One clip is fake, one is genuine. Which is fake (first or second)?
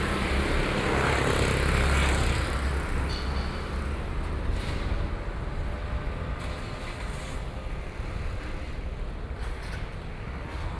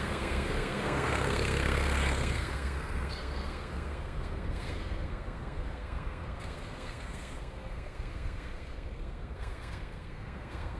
second